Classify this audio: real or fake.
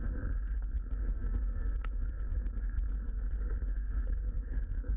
fake